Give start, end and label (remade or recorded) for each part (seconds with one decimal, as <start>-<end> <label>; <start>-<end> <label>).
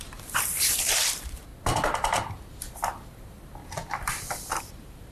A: 0.0-1.5 remade; 1.5-4.6 recorded; 4.6-5.1 remade